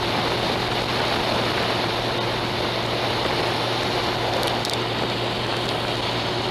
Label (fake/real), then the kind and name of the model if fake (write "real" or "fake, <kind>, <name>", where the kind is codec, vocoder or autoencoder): real